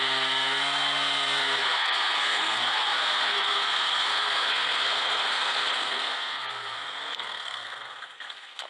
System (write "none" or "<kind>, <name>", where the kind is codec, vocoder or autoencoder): codec, SNAC